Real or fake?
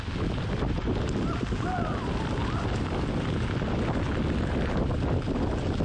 real